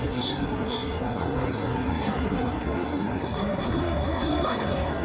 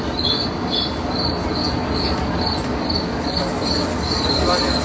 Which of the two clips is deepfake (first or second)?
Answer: first